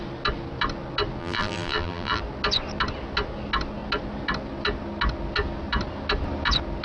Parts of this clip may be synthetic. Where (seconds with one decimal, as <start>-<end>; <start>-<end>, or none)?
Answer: 1.2-2.2